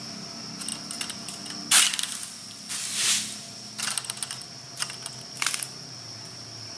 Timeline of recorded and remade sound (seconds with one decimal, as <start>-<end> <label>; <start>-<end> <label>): 0.0-6.8 recorded